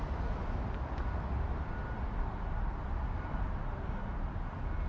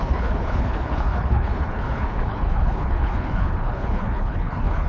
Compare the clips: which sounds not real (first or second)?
second